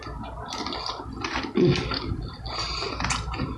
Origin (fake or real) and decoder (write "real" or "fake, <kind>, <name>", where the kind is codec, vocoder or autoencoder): real